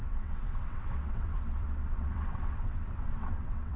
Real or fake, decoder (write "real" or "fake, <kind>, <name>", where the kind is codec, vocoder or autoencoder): fake, vocoder, WaveNeXt